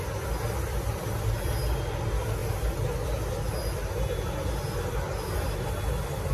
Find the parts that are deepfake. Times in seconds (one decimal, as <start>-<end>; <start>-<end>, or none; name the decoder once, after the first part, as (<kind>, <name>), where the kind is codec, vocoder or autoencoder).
none